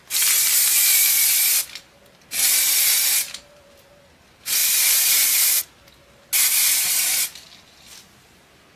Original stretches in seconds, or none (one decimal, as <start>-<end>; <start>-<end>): 0.0-4.6; 5.6-8.8